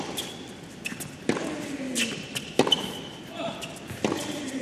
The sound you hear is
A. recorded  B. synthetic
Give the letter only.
A